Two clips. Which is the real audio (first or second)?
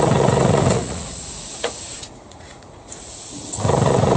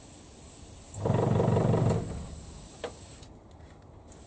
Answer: second